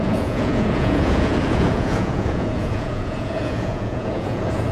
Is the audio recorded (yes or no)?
no